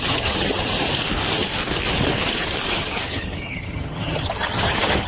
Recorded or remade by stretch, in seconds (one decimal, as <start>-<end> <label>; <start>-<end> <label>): 0.0-0.7 remade; 0.7-2.7 recorded; 2.7-5.1 remade